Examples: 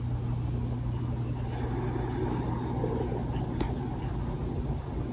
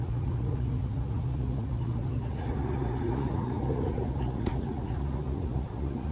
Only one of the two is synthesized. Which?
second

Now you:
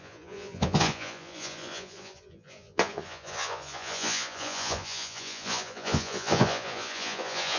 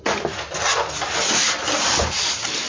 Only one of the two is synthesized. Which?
first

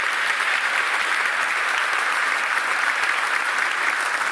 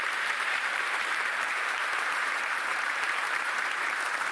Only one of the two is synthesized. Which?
second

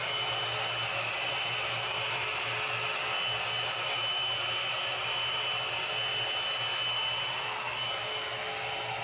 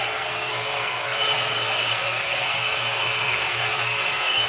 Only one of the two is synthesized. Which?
second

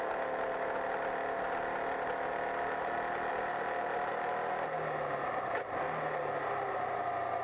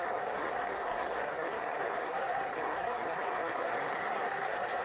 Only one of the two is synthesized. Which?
second